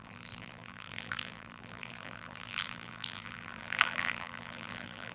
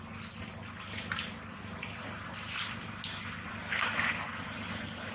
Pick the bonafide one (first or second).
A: second